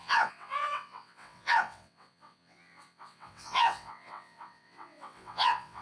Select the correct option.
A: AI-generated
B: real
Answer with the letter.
A